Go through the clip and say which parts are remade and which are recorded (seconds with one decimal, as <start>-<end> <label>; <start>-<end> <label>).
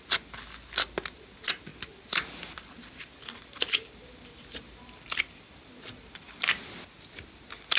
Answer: 0.0-1.7 recorded; 1.7-6.4 remade; 6.4-7.8 recorded